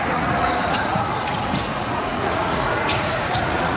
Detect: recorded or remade remade